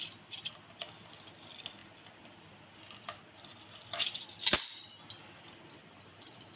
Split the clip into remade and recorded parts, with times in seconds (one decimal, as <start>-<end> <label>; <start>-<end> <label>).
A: 0.0-5.8 recorded; 5.8-6.6 remade